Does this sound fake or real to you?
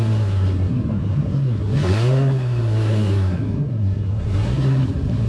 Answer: fake